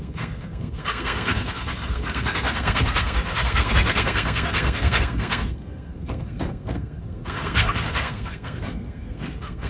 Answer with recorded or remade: remade